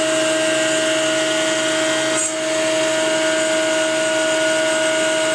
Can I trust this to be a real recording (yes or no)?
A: yes